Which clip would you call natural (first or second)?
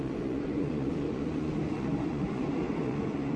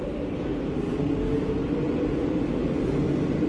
second